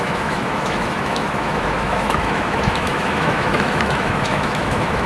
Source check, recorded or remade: remade